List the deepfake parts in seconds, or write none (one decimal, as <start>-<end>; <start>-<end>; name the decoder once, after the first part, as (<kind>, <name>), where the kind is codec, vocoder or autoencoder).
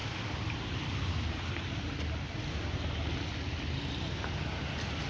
none